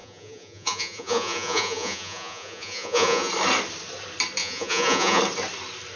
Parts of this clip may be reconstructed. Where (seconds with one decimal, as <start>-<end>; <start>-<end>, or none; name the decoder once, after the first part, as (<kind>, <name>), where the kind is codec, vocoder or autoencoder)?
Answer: 0.0-3.3 (vocoder, Vocos); 4.4-5.2